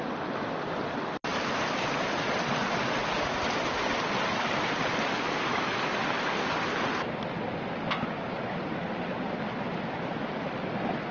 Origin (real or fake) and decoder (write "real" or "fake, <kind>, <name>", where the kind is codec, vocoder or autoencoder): real